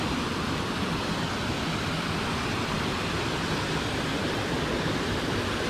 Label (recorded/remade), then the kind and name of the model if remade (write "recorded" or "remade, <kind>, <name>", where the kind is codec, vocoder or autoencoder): recorded